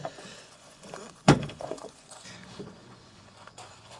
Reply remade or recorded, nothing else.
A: remade